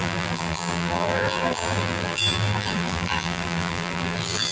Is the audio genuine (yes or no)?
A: no